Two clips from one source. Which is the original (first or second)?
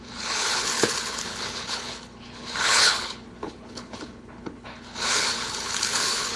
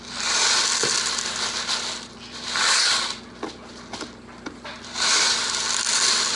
second